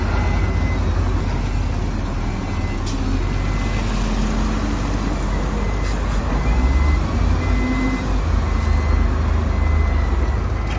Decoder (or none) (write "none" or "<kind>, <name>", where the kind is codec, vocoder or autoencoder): none